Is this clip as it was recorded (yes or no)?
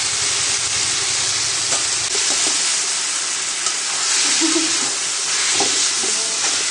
yes